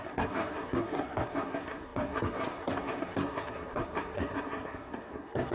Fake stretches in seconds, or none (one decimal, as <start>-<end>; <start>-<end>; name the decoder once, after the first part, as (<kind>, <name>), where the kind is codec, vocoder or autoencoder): 0.0-5.5 (codec, SNAC)